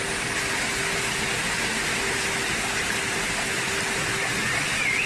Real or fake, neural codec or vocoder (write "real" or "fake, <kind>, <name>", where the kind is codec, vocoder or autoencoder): real